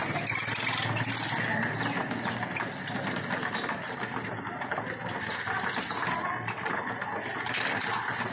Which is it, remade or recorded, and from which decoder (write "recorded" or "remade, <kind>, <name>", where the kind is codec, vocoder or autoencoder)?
recorded